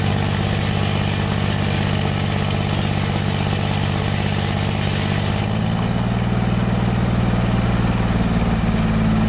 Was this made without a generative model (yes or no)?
yes